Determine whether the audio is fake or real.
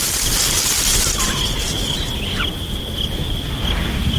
real